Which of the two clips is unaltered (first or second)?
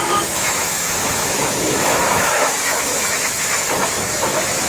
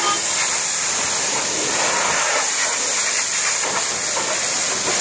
second